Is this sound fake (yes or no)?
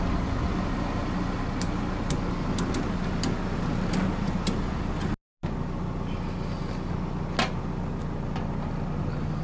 no